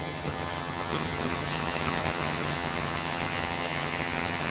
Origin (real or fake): fake